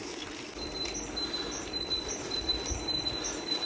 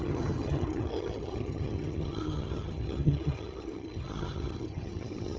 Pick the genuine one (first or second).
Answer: first